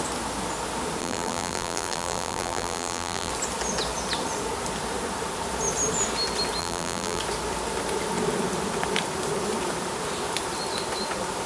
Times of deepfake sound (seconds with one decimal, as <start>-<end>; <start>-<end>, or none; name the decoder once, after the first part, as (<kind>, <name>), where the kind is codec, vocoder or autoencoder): 1.0-3.3 (vocoder, BigVGAN v2); 6.6-7.2